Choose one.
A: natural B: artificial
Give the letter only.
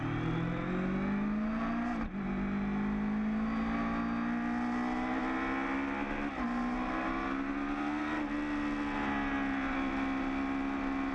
A